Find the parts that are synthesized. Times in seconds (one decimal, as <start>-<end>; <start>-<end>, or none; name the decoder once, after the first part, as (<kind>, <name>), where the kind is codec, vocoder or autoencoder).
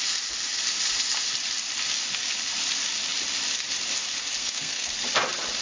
4.4-4.9 (codec, SNAC)